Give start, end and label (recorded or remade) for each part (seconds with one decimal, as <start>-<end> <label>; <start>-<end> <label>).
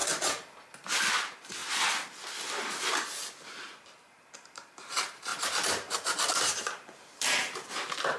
0.0-1.0 recorded; 1.0-1.6 remade; 1.6-3.5 recorded; 3.5-8.2 remade